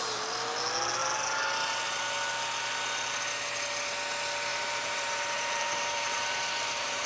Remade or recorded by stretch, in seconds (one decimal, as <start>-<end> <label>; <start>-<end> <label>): 0.0-4.5 recorded; 4.5-7.1 remade

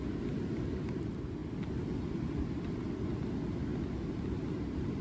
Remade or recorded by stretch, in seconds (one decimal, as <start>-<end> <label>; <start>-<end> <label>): 0.0-5.0 recorded

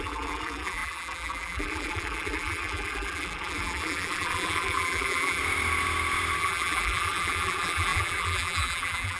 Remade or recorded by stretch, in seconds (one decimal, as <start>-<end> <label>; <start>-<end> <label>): 0.0-5.4 remade; 5.4-6.4 recorded; 6.4-9.2 remade

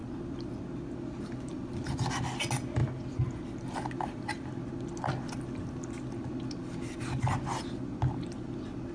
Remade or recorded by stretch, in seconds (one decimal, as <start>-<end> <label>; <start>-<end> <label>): 0.0-0.7 remade; 0.7-2.8 recorded; 2.8-4.7 remade; 4.7-8.9 recorded